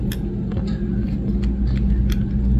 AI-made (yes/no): no